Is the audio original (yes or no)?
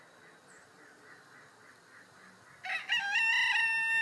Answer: yes